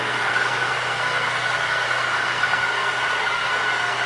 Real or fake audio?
fake